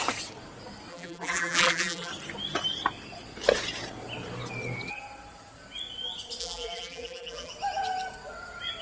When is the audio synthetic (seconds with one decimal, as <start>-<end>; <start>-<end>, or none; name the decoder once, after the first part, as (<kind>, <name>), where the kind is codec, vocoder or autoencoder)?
0.9-2.1 (vocoder, BigVGAN v2); 6.4-7.5